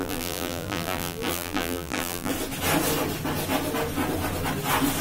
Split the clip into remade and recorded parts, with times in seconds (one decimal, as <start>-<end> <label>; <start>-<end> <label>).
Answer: 0.0-2.3 remade; 2.3-5.0 recorded